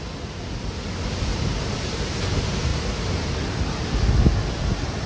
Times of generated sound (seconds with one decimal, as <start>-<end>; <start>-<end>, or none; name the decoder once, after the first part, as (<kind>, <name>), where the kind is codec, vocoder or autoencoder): 1.3-2.3 (vocoder, BigVGAN v2); 2.7-3.7